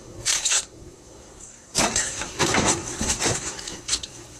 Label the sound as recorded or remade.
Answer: remade